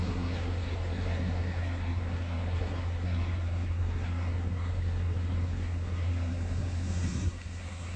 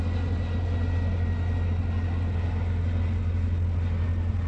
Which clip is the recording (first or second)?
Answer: second